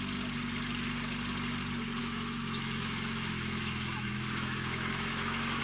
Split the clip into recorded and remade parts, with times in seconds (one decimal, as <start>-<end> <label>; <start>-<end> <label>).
0.0-2.0 recorded; 2.0-5.6 remade